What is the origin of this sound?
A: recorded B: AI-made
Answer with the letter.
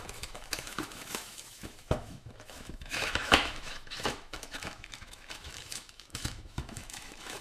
B